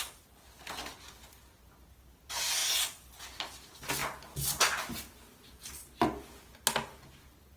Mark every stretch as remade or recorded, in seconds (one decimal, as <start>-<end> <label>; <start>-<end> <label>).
0.0-7.6 recorded